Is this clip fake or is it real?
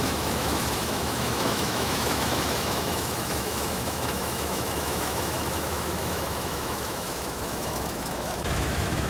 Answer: fake